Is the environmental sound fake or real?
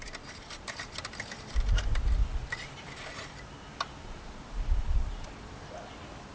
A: fake